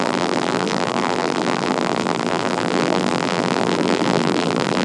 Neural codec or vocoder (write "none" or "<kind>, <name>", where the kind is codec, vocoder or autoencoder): vocoder, BigVGAN v2